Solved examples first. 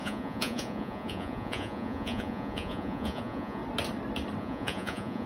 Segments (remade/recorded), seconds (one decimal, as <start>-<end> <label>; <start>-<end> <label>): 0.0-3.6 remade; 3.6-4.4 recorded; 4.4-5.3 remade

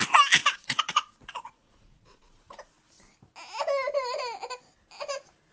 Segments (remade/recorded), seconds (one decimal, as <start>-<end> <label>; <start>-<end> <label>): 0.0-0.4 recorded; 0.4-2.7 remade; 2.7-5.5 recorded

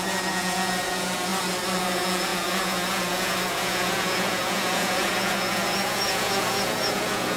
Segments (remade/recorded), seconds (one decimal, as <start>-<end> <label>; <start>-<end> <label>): 0.0-1.3 remade; 1.3-1.8 recorded; 1.8-7.4 remade

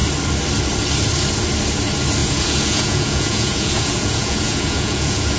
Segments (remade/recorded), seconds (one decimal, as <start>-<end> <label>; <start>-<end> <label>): 0.0-2.2 recorded; 2.2-5.4 remade

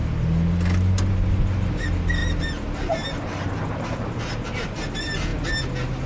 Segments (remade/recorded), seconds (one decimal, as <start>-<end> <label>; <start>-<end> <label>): 0.0-6.1 recorded

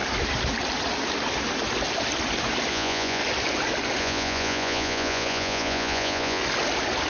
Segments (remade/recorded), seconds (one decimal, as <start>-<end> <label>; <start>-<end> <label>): 0.0-2.7 recorded; 2.7-3.2 remade; 3.2-4.0 recorded; 4.0-6.4 remade; 6.4-7.1 recorded

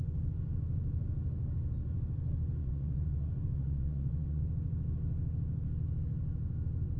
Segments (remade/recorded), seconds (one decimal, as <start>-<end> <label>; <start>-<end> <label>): 0.0-2.6 recorded; 2.6-4.4 remade; 4.4-7.0 recorded